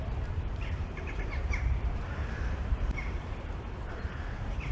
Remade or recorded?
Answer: remade